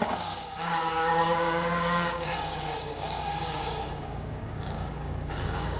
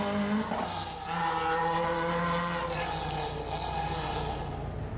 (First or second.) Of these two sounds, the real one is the second